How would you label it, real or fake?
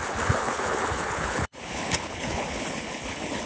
fake